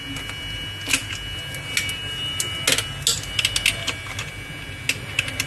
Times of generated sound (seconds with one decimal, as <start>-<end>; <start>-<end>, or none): none